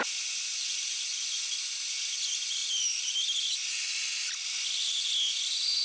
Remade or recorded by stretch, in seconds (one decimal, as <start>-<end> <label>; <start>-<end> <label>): 0.0-5.8 recorded